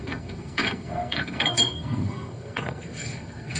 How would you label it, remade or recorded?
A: remade